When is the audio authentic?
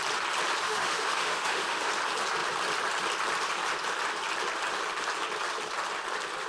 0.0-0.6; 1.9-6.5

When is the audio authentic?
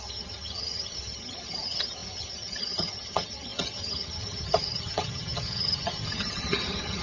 none